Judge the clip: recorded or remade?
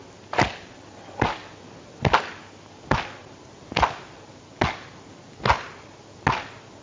recorded